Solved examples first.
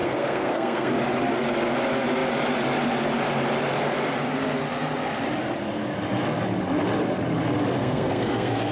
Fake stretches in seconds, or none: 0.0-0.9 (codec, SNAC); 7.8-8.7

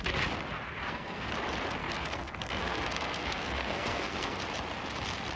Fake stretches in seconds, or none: 0.8-1.3 (codec, SNAC); 1.8-4.4

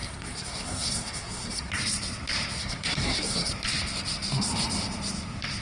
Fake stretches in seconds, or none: 0.0-1.7 (codec, SNAC); 2.6-3.5

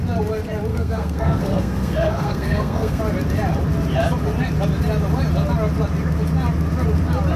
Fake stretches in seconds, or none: 0.7-3.0 (codec, SNAC)

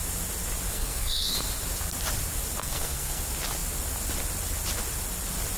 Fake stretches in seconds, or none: 0.7-1.4 (codec, SNAC); 2.6-3.2